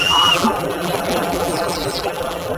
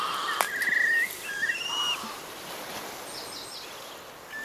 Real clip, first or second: second